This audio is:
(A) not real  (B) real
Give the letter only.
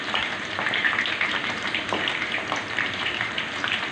A